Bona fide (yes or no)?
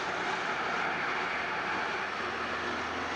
yes